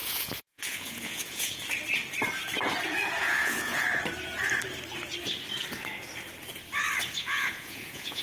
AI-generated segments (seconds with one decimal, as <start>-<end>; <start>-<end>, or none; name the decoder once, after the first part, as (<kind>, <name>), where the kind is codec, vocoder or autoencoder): 0.0-1.7 (vocoder, Vocos); 3.2-4.0; 7.2-8.2